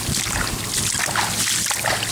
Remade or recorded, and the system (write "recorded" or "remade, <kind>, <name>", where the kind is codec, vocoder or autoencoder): recorded